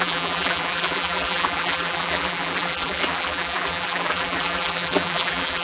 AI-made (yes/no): yes